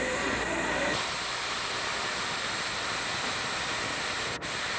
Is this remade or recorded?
recorded